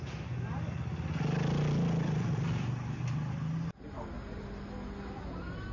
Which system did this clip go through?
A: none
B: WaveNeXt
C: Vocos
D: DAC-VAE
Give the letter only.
A